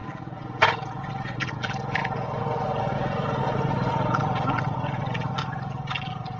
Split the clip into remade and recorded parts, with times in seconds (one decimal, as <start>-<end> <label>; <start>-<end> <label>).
0.0-6.4 recorded